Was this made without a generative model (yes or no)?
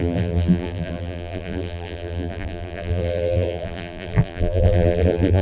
no